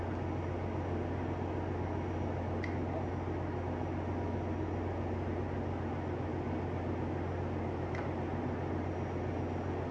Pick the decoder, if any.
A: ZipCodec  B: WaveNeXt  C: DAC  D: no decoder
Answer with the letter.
D